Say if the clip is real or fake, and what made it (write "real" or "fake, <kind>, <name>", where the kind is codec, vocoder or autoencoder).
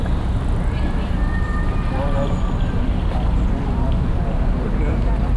real